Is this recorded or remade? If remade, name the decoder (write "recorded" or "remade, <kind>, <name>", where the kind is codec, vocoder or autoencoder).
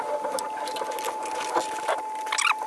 recorded